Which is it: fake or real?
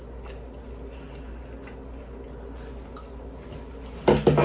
real